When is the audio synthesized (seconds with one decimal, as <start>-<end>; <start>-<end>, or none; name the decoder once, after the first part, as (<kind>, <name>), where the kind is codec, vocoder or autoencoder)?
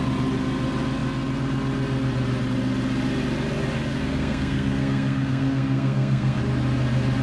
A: 3.9-6.4 (codec, SNAC)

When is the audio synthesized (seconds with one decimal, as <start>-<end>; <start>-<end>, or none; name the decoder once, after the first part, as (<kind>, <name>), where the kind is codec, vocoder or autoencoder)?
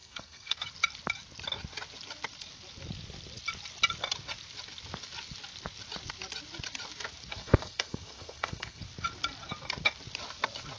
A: 0.0-0.6 (codec, SNAC); 7.3-8.8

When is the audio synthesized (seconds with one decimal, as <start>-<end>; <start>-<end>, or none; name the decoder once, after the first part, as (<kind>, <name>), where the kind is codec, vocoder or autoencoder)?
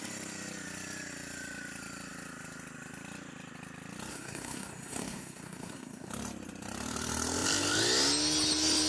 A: 4.1-6.1 (codec, SNAC)